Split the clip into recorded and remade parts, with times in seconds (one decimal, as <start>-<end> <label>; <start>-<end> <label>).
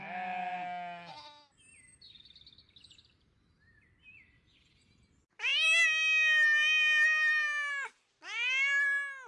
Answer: 0.0-9.3 recorded